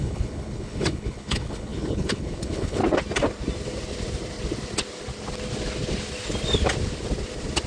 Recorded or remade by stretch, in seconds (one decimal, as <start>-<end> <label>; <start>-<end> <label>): 0.0-2.8 remade; 2.8-7.7 recorded